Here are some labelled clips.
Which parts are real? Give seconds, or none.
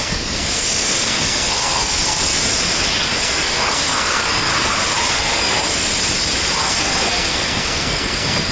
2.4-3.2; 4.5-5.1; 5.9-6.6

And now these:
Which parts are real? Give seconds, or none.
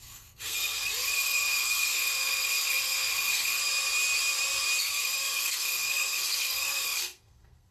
3.6-4.8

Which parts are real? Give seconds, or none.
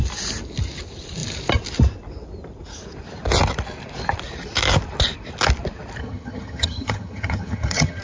0.0-6.0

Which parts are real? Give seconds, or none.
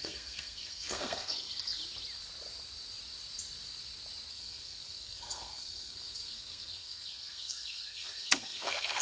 1.8-4.3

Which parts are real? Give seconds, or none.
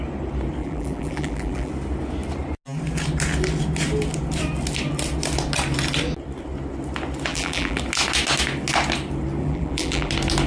0.0-0.6; 1.7-7.3; 7.8-9.4; 10.1-10.5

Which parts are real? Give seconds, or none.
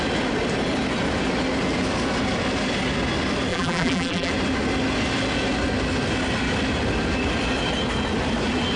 0.0-3.5; 4.3-8.8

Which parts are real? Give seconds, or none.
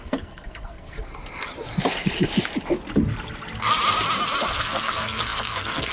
1.1-4.6